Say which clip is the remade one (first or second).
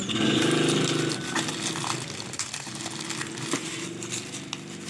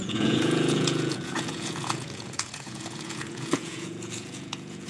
second